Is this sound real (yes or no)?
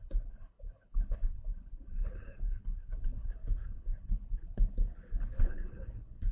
no